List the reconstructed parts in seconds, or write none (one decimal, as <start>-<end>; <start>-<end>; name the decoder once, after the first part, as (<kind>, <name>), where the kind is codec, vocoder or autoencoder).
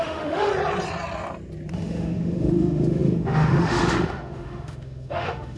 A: 0.0-0.5 (autoencoder, DAC-VAE); 1.7-5.6